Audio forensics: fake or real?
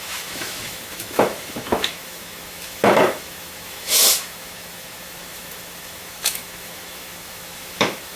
fake